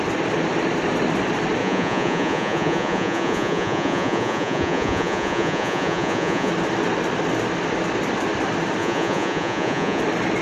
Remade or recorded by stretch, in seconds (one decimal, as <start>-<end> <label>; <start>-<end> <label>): 0.0-1.6 recorded; 1.6-6.5 remade; 6.5-8.8 recorded; 8.8-10.0 remade; 10.0-10.4 recorded